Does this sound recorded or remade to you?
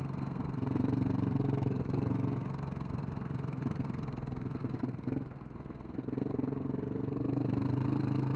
remade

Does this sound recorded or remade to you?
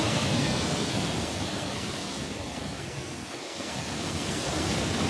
remade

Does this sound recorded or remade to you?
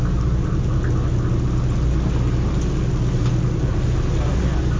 recorded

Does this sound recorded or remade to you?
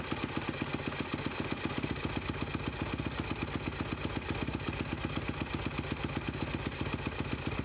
recorded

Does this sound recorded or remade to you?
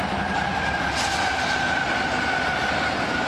recorded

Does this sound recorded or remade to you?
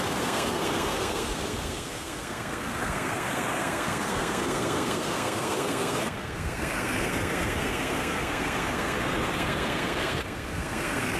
remade